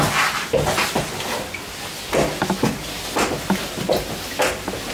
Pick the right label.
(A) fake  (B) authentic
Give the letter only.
B